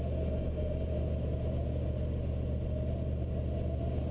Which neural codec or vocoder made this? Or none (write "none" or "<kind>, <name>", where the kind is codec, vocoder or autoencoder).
none